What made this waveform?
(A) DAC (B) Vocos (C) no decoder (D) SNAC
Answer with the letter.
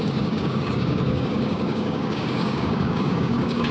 A